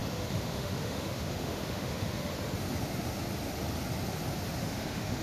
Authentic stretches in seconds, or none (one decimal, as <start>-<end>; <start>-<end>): 2.3-4.6